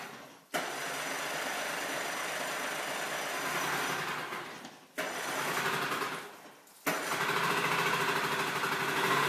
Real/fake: real